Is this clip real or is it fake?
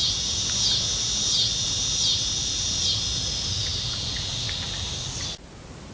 real